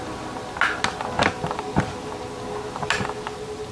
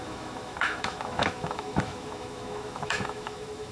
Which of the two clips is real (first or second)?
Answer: first